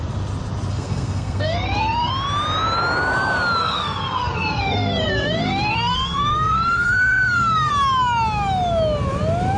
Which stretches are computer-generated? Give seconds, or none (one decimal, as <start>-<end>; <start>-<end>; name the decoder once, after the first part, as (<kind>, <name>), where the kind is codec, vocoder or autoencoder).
0.7-2.1 (codec, SNAC); 3.6-7.7